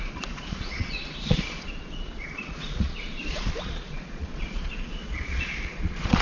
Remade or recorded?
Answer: remade